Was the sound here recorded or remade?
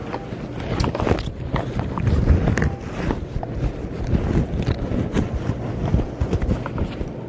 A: recorded